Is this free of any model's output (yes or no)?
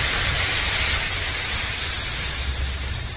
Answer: yes